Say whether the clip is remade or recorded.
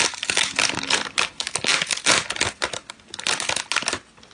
recorded